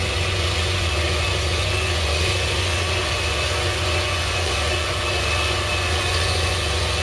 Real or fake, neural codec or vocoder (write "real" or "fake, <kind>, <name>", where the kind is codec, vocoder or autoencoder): fake, vocoder, Vocos